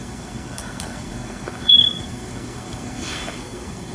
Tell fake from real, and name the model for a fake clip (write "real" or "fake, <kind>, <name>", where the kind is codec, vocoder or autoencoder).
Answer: fake, codec, SNAC